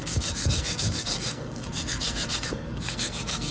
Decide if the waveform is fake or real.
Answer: fake